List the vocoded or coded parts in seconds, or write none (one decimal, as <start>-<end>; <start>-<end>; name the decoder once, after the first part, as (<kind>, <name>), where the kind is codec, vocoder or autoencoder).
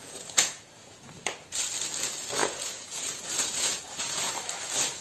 0.0-1.0 (vocoder, Vocos); 2.4-4.3